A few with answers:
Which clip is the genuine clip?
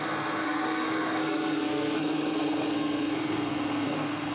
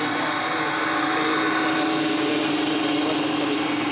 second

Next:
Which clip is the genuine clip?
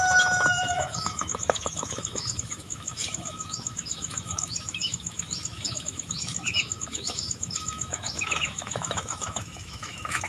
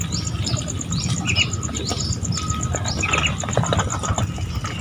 second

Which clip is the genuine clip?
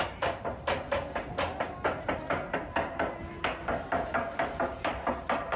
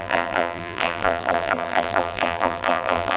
first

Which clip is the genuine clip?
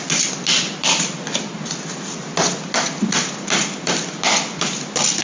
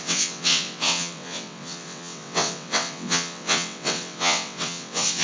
first